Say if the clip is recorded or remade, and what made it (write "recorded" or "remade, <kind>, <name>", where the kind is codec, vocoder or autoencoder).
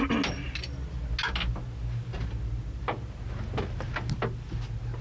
recorded